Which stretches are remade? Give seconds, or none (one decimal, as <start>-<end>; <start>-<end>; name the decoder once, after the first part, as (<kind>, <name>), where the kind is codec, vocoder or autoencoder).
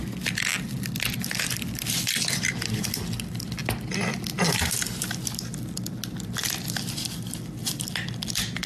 none